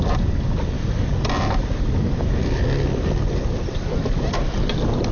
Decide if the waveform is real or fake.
real